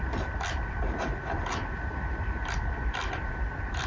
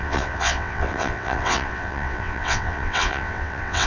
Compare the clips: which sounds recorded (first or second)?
first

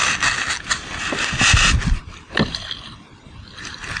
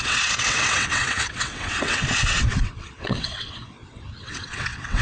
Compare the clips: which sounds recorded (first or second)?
first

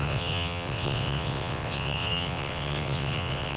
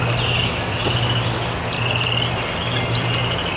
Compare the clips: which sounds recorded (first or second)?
second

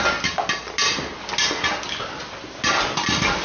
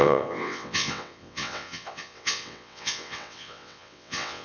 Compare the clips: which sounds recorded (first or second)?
first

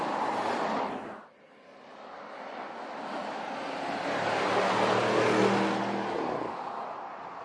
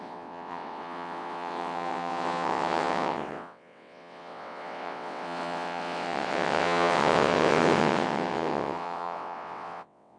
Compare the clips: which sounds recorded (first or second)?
first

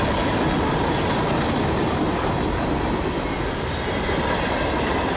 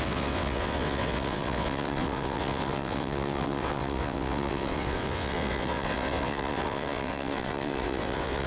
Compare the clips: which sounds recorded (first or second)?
first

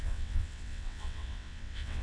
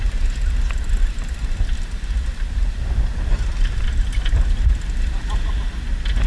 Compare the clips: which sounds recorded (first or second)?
second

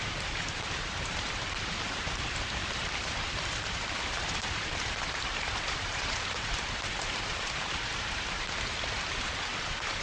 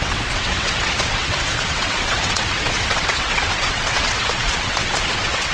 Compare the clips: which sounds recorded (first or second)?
first